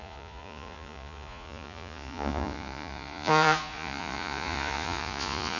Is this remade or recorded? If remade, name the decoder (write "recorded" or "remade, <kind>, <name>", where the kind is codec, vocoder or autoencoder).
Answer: remade, vocoder, Vocos